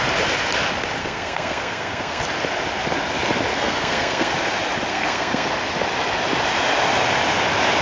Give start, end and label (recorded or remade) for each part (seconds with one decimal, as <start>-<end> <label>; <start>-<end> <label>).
0.0-1.0 recorded; 1.0-2.2 remade; 2.2-3.5 recorded; 3.5-4.3 remade; 4.3-4.9 recorded; 4.9-5.5 remade; 5.5-7.8 recorded